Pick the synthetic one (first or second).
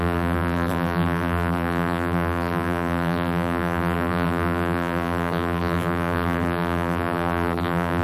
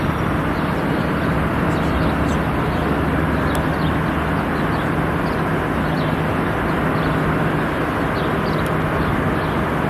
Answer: first